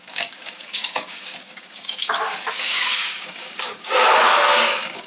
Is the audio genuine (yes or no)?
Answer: no